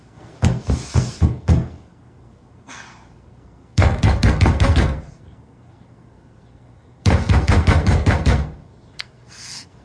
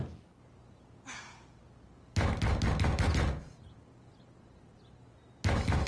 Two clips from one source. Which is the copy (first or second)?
first